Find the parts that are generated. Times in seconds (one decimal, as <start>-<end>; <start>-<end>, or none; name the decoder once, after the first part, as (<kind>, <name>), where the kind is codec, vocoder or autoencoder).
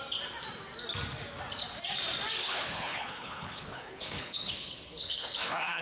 2.4-5.8 (codec, HILCodec)